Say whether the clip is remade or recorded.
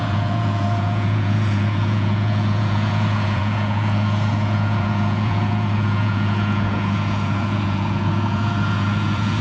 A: remade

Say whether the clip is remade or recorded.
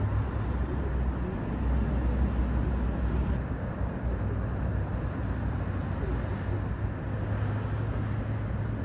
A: recorded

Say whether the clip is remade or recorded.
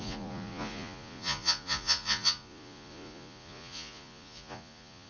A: remade